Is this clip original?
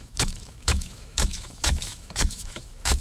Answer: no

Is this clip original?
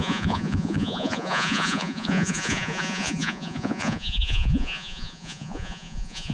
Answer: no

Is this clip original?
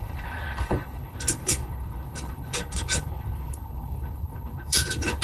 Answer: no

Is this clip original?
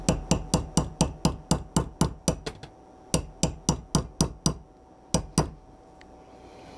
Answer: yes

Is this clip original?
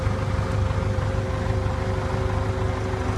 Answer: yes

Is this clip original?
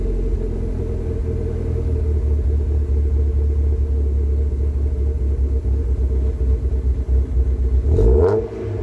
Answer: yes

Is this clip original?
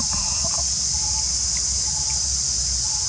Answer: yes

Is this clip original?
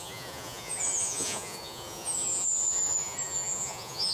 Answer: no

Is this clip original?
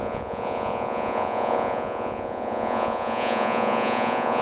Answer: no